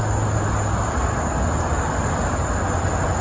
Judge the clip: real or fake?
real